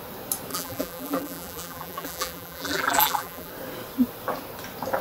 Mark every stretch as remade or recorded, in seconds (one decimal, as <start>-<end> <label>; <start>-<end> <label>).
0.0-0.5 recorded; 0.5-3.5 remade; 3.5-5.0 recorded